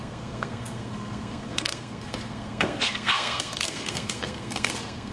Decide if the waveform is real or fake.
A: fake